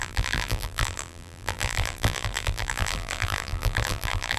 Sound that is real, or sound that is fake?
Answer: fake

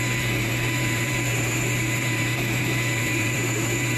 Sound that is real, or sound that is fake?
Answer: fake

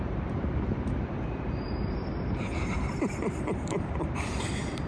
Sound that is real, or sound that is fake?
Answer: fake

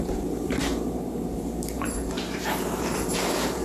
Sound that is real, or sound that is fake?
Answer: fake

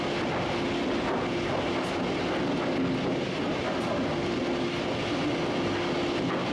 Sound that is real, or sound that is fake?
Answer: real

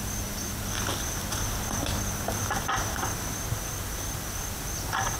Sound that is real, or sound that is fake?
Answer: real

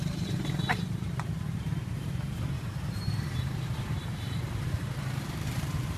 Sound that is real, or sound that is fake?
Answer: fake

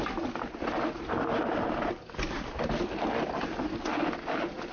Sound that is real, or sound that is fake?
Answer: real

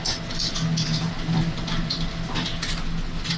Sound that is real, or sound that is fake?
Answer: real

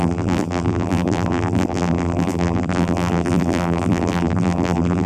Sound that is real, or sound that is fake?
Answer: fake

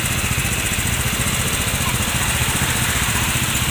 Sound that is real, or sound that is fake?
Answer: real